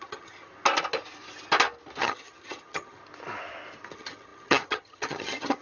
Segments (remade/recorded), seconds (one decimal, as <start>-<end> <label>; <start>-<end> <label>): 0.0-0.5 remade; 0.5-2.0 recorded; 2.0-3.0 remade; 3.0-3.9 recorded; 3.9-5.6 remade